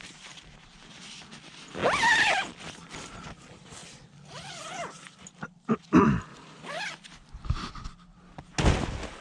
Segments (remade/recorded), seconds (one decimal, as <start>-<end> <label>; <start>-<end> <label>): 0.0-1.8 recorded; 1.8-2.9 remade; 2.9-3.8 recorded; 3.8-5.0 remade; 5.0-6.3 recorded; 6.3-6.8 remade; 6.8-9.2 recorded